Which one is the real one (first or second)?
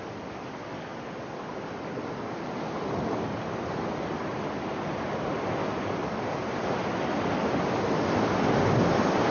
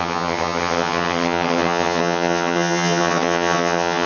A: first